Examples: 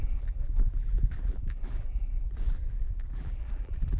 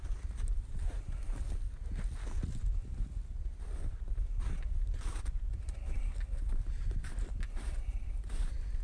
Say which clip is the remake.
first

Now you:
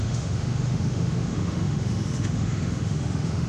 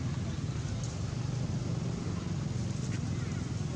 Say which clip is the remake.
first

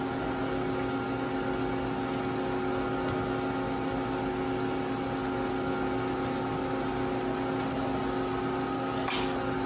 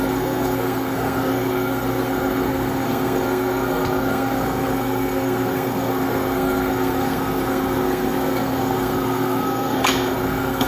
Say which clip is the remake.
second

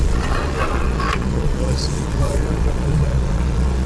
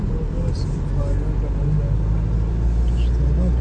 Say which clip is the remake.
first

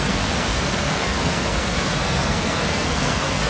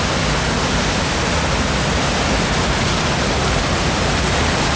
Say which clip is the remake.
first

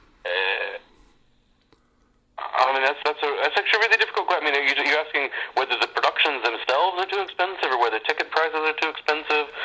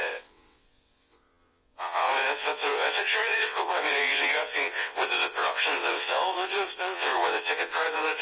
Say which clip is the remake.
second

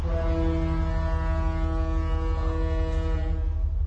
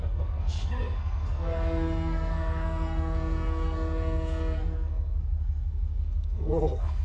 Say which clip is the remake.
second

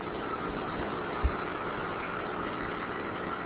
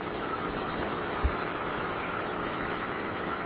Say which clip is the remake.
second